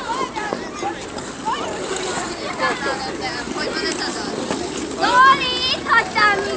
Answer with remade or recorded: recorded